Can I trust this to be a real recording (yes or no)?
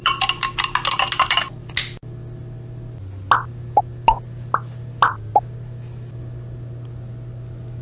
yes